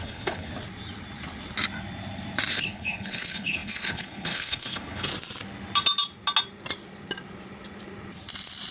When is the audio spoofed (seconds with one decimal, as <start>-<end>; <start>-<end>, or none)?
0.0-0.5; 2.5-5.1